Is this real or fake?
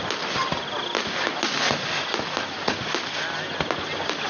real